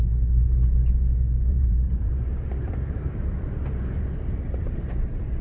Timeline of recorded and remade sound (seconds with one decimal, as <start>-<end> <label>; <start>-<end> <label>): 0.0-1.5 recorded; 1.5-4.7 remade; 4.7-5.4 recorded